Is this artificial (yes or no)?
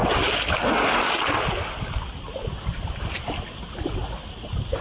no